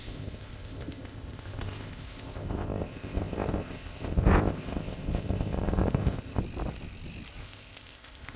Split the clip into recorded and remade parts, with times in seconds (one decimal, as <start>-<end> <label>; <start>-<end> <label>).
0.0-6.4 remade; 6.4-7.4 recorded; 7.4-8.4 remade